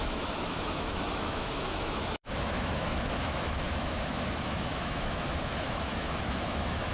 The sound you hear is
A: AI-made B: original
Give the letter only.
A